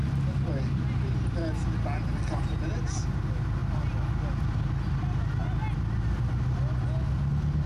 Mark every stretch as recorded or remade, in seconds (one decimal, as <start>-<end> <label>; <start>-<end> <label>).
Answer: 0.0-7.7 recorded